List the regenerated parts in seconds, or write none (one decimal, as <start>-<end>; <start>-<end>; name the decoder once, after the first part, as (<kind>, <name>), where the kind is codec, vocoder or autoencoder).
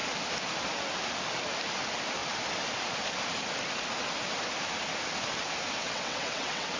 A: 5.8-6.8 (vocoder, WaveNeXt)